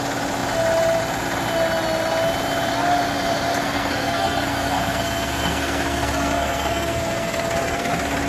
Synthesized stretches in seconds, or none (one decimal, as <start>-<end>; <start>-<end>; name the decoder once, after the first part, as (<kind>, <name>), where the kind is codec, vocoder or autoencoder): 3.5-7.9 (codec, SNAC)